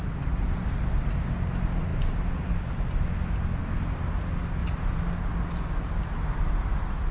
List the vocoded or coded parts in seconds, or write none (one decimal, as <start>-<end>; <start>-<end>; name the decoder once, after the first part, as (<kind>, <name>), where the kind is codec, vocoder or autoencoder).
none